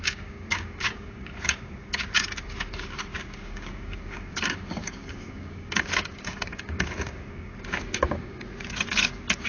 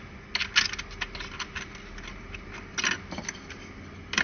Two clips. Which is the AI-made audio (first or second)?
first